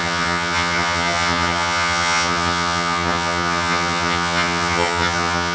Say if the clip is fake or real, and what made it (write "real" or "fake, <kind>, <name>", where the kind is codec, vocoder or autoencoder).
fake, vocoder, HiFi-GAN